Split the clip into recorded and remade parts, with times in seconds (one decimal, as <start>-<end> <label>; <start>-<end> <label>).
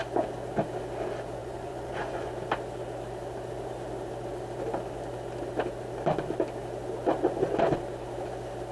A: 0.0-1.4 recorded; 1.4-2.3 remade; 2.3-8.7 recorded